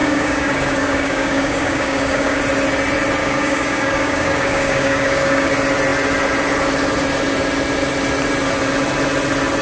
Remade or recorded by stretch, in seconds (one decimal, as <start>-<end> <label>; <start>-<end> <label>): 0.0-2.4 remade; 2.4-3.2 recorded; 3.2-5.5 remade; 5.5-9.6 recorded

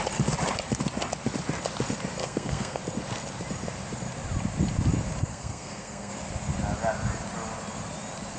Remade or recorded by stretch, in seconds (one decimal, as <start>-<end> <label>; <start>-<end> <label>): 0.0-2.2 recorded; 2.2-2.8 remade; 2.8-5.2 recorded; 5.2-6.1 remade; 6.1-8.4 recorded

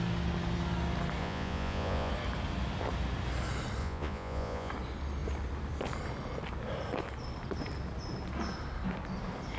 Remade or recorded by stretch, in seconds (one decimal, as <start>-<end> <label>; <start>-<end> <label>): 0.0-1.2 recorded; 1.2-2.1 remade; 2.1-3.8 recorded; 3.8-4.7 remade; 4.7-9.6 recorded